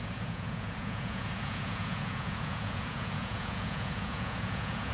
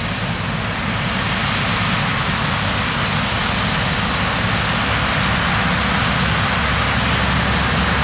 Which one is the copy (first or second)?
first